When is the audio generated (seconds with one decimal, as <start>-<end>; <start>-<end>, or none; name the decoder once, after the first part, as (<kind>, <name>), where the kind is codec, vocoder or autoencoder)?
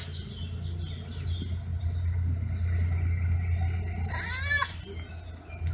none